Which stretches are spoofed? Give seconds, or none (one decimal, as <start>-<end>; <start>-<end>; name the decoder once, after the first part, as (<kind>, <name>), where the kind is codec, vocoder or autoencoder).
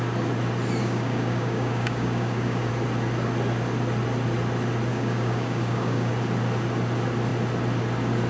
0.8-2.7 (codec, DAC); 4.9-6.1